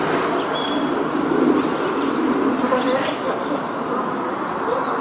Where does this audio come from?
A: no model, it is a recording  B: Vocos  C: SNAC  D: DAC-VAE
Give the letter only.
A